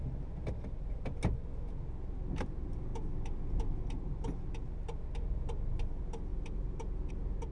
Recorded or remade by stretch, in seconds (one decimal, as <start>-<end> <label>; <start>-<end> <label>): 0.0-7.5 recorded